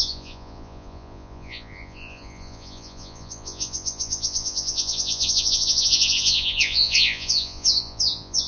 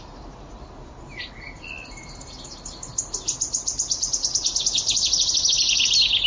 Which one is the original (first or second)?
second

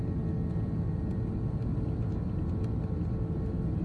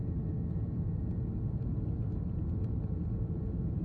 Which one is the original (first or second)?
first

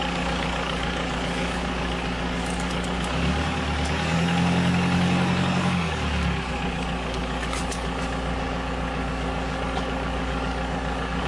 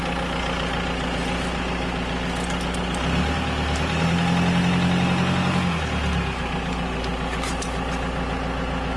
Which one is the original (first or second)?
second